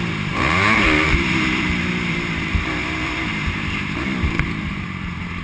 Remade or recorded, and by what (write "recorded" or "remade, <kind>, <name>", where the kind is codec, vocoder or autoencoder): remade, vocoder, BigVGAN v2